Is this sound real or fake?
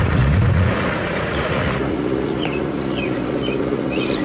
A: fake